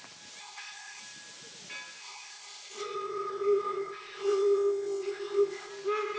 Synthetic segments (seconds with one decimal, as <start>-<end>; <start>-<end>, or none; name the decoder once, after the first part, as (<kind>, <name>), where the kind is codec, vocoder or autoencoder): 0.4-1.0 (codec, ZipCodec); 2.0-5.7